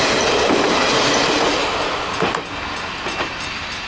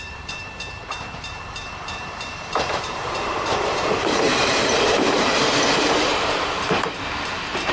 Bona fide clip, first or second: first